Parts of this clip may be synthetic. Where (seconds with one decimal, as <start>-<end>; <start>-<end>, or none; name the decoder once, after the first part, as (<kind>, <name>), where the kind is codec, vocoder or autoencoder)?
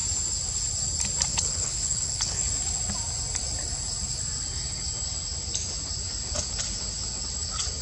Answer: 1.3-2.5 (codec, HILCodec)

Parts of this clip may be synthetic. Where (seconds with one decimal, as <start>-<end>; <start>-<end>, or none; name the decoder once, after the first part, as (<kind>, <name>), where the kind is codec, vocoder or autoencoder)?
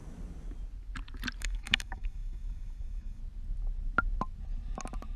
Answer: 1.4-3.2 (codec, DAC)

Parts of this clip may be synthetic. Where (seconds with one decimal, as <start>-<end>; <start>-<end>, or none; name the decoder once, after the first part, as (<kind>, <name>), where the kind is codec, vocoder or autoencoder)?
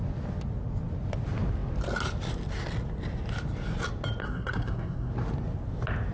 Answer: 4.2-5.1 (codec, SNAC)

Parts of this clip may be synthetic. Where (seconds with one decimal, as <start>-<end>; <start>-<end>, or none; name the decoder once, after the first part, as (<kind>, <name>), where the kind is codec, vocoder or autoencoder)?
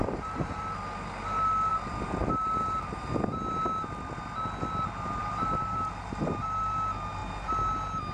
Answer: 0.0-0.6 (vocoder, BigVGAN v2); 5.2-6.6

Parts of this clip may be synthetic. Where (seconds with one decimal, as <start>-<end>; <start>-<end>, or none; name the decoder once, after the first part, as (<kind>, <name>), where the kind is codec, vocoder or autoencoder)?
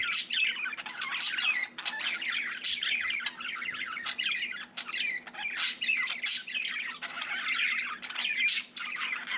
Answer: none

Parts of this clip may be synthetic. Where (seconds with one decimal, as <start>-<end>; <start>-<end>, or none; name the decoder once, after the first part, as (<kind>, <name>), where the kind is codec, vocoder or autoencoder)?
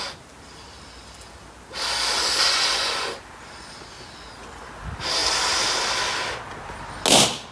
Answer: 2.5-3.1 (vocoder, Vocos)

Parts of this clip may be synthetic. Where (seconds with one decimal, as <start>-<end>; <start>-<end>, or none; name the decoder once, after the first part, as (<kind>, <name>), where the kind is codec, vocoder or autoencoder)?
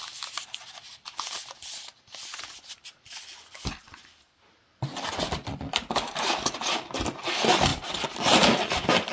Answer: 7.7-8.4 (vocoder, BigVGAN v2)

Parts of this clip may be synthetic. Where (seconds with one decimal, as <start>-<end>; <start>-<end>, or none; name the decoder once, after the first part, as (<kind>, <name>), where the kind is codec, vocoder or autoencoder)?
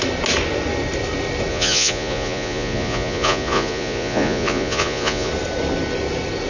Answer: 1.5-5.3 (vocoder, Vocos)